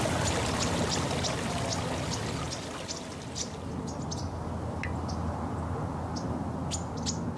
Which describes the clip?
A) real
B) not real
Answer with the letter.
A